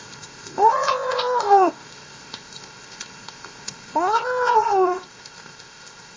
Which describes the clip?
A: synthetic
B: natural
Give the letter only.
A